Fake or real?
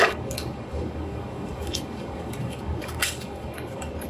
fake